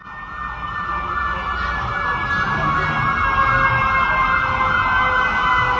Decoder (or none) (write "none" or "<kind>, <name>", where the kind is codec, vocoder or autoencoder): none